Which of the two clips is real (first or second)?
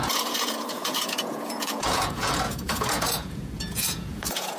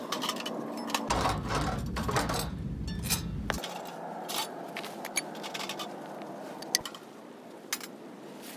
second